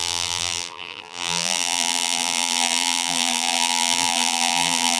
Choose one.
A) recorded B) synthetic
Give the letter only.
B